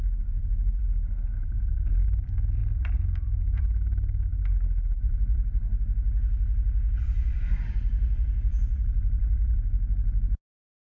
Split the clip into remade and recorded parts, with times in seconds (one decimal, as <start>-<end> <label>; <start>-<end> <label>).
0.0-2.6 remade; 2.6-3.4 recorded; 3.4-4.3 remade; 4.3-4.9 recorded; 4.9-5.6 remade; 5.6-7.0 recorded; 7.0-10.9 remade